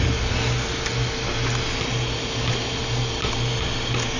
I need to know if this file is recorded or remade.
recorded